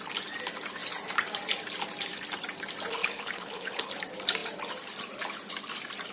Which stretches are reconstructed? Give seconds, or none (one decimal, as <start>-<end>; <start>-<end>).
3.0-3.9